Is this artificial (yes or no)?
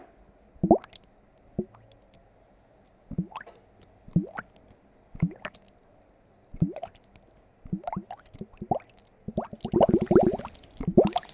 no